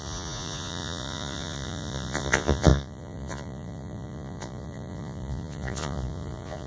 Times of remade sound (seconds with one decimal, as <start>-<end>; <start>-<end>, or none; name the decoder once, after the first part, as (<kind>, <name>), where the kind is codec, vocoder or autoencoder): 0.0-6.7 (vocoder, Vocos)